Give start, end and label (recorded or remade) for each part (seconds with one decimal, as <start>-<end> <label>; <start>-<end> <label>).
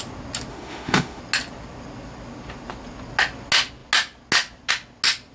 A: 0.0-0.5 recorded; 0.5-1.2 remade; 1.2-5.3 recorded